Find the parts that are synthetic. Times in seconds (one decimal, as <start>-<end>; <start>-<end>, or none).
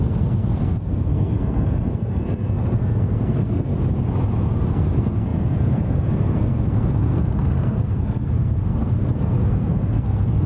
0.0-3.7; 4.7-10.5